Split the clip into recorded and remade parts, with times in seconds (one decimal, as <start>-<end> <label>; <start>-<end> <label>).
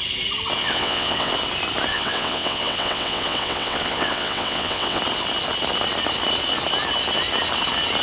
0.0-0.6 recorded; 0.6-1.3 remade; 1.3-1.9 recorded; 1.9-5.0 remade; 5.0-8.0 recorded